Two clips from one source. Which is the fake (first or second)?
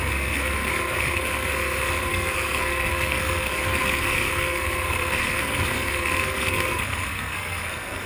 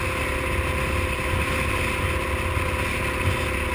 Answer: first